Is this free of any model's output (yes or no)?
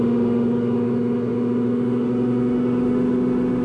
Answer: no